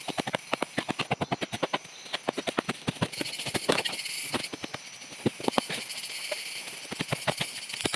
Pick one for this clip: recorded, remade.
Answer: recorded